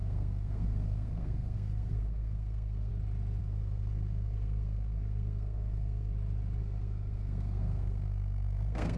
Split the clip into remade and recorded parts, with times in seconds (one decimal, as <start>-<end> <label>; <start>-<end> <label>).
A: 0.0-2.9 remade; 2.9-3.4 recorded; 3.4-6.1 remade; 6.1-6.6 recorded; 6.6-9.0 remade